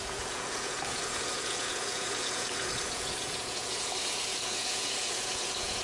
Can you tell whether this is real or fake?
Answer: fake